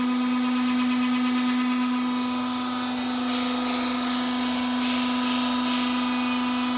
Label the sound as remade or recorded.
recorded